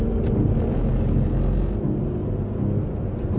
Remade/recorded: recorded